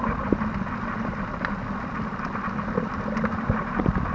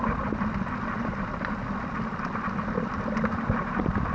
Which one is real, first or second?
first